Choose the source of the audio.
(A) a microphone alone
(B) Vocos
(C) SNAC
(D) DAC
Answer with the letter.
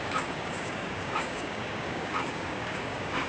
D